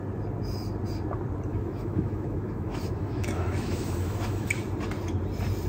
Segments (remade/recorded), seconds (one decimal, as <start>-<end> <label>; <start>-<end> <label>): 0.0-1.5 recorded; 1.5-4.5 remade; 4.5-5.7 recorded